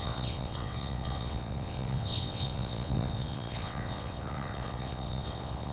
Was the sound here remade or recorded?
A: remade